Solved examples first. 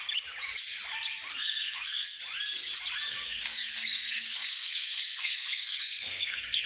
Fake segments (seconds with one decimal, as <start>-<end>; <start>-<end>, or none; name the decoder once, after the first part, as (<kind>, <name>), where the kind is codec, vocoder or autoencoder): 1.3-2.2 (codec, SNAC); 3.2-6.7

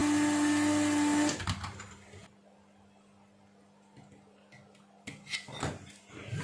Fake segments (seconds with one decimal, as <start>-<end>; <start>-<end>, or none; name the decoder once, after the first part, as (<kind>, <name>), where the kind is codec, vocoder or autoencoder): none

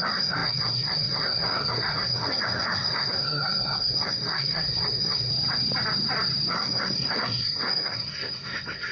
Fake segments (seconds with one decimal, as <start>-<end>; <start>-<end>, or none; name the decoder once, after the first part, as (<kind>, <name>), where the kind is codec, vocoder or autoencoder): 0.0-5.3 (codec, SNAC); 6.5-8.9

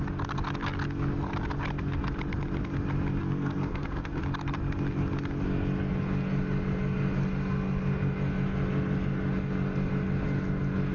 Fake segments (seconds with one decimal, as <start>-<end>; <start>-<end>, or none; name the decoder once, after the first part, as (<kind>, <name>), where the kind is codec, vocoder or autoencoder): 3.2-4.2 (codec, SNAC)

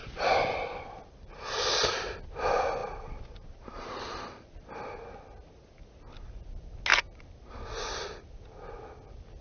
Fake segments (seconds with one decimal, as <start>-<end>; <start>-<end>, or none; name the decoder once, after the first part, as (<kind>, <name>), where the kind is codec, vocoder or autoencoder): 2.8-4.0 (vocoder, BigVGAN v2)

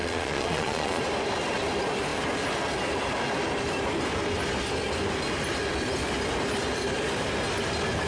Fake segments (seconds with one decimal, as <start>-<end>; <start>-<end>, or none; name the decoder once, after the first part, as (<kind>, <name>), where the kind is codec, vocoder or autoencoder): 0.0-1.0 (vocoder, Vocos)

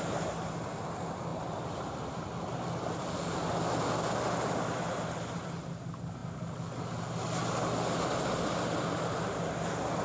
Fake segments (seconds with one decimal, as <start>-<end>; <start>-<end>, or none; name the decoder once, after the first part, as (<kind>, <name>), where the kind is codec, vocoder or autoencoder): none